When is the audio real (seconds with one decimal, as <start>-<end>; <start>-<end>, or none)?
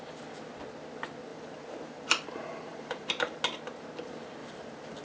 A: 0.0-1.3; 3.4-4.4